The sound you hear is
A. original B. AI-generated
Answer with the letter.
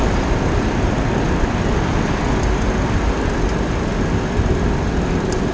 A